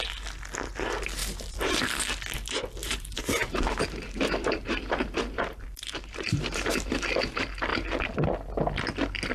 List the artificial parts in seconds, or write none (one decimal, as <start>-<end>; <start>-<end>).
1.2-1.8; 2.8-6.9